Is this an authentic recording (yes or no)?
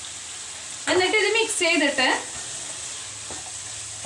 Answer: yes